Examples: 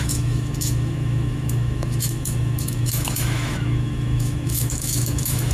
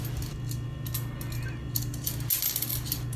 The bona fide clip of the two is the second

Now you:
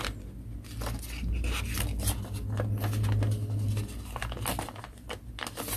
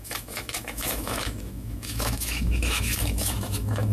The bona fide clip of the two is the first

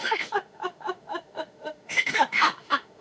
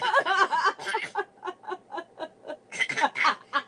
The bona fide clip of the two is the second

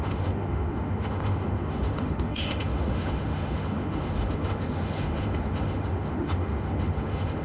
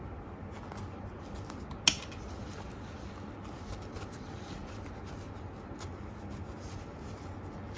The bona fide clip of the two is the second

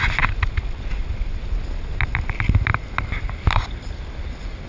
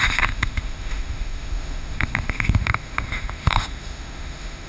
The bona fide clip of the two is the first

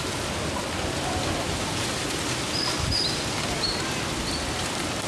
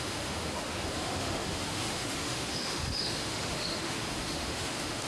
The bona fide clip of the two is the first